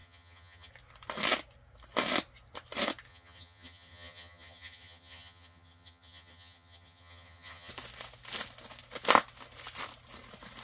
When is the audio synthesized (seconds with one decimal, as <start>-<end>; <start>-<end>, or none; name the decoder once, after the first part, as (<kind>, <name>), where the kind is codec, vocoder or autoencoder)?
0.0-0.7 (vocoder, HiFi-GAN); 3.1-7.7